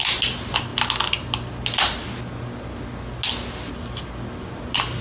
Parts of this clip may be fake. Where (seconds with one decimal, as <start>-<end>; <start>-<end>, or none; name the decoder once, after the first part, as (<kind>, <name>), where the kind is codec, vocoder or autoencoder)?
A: none

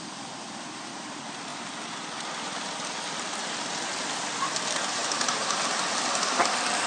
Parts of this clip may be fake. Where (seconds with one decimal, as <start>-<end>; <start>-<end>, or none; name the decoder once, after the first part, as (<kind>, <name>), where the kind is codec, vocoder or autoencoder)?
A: none

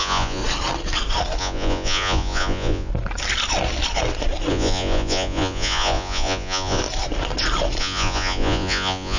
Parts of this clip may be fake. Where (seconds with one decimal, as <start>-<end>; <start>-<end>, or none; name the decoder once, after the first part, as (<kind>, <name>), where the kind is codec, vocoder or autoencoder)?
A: 0.0-0.4 (vocoder, Vocos); 1.4-2.9; 4.5-6.8; 7.8-9.2

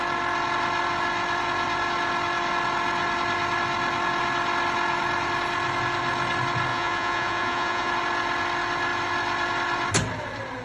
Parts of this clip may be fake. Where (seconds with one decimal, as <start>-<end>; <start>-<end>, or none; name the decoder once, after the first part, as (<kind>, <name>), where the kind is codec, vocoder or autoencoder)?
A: 6.7-7.9 (vocoder, Vocos)

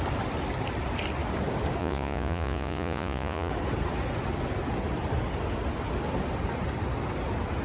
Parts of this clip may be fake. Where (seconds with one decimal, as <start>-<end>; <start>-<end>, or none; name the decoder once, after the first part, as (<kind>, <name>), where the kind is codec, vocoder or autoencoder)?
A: 1.8-3.5 (vocoder, Vocos)